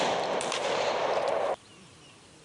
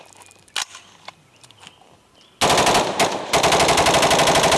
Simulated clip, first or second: first